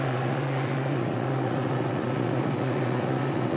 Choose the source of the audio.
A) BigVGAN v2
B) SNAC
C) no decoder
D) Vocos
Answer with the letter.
D